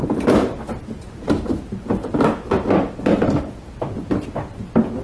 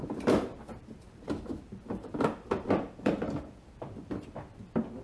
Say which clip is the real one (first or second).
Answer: first